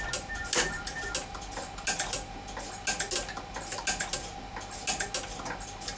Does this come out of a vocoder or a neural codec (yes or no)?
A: no